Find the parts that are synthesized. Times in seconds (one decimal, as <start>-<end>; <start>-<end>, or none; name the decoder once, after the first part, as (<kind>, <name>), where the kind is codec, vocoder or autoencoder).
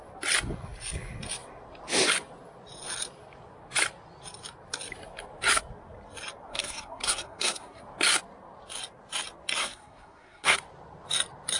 6.5-7.8 (codec, SNAC); 9.6-10.6